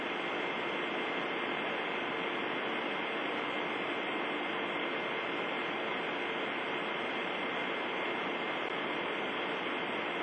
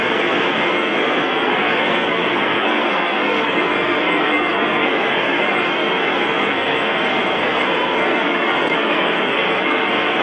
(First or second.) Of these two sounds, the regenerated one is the second